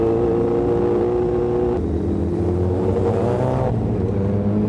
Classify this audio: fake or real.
real